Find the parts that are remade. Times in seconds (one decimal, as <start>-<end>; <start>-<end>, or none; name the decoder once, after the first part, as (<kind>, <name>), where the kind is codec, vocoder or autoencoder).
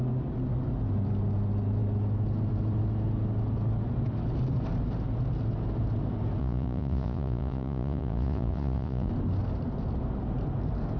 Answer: 6.4-9.1 (vocoder, Vocos)